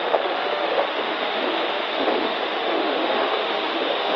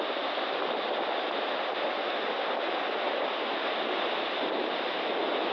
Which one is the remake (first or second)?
first